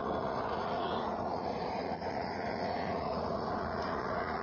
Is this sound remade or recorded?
remade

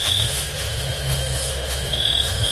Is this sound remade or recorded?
remade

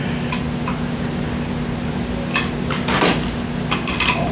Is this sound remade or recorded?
recorded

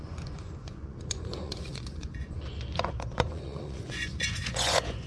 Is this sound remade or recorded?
remade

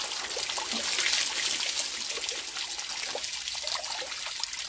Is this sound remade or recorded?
recorded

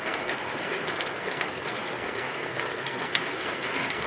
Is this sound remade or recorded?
remade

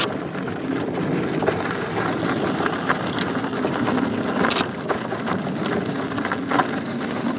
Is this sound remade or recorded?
recorded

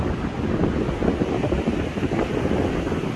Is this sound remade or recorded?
recorded